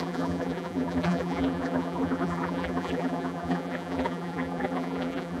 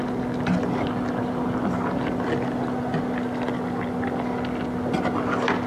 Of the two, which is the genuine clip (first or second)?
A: second